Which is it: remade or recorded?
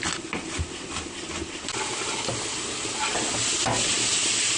recorded